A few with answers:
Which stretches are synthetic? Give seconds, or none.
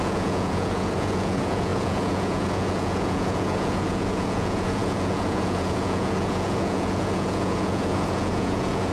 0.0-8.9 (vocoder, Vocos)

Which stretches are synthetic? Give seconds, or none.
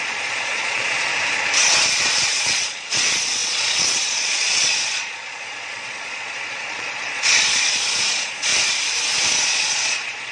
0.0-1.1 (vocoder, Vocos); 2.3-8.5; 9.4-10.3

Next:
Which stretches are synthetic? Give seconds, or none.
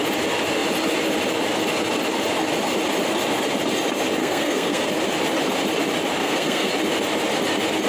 4.2-4.9 (codec, SNAC); 6.2-6.7